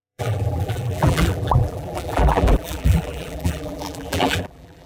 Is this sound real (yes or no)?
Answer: no